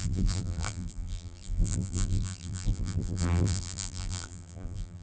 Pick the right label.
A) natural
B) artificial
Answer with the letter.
B